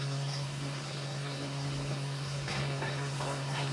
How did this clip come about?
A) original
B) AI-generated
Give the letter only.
B